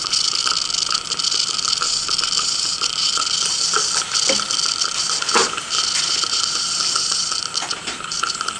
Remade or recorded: recorded